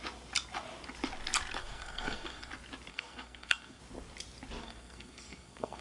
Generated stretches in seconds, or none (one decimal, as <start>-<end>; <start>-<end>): 1.6-2.5; 2.9-3.8; 4.6-5.8